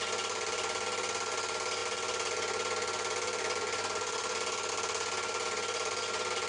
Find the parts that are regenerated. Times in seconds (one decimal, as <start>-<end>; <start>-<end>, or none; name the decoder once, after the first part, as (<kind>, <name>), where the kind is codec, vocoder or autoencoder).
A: none